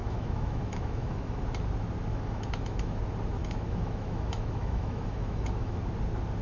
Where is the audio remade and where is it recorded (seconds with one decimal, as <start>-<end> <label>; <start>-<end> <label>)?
0.0-1.4 remade; 1.4-2.1 recorded; 2.1-2.9 remade; 2.9-3.4 recorded; 3.4-5.8 remade; 5.8-6.4 recorded